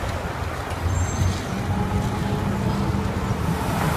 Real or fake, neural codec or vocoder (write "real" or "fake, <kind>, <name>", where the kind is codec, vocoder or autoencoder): real